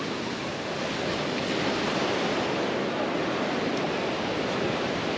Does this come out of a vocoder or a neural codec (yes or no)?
no